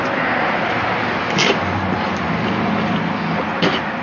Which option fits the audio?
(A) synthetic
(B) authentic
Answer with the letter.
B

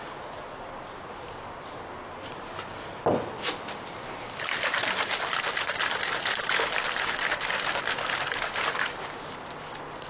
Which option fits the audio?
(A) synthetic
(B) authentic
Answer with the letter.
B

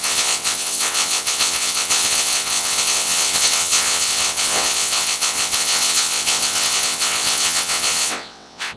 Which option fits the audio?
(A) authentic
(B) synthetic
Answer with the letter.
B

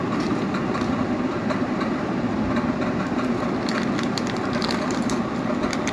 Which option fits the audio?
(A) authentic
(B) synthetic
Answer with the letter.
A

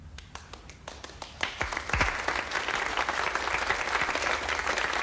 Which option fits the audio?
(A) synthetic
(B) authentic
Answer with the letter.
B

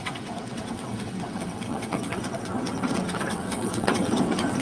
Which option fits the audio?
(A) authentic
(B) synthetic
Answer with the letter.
B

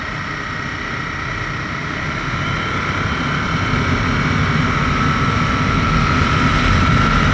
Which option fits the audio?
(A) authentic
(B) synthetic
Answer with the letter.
A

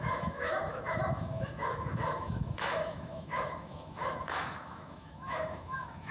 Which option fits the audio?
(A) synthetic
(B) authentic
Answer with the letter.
A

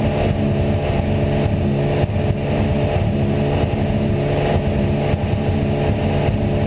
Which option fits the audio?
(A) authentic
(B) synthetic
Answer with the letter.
A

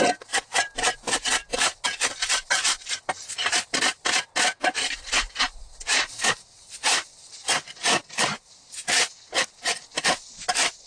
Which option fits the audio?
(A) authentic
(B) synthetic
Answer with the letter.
A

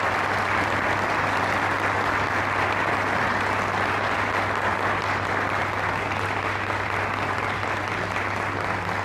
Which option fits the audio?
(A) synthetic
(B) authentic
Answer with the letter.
A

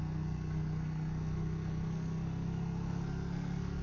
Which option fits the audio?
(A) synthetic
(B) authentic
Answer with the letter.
A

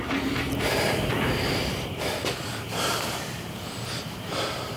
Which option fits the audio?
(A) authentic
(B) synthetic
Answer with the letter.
B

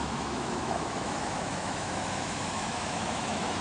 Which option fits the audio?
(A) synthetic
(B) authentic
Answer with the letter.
A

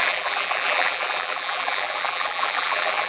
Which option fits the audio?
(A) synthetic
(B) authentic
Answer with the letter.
A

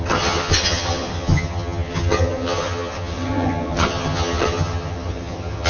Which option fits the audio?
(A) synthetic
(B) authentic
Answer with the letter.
A